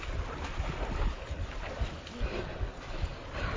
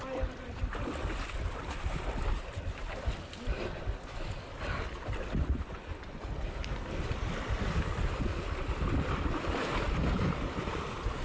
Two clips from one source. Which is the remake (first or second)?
second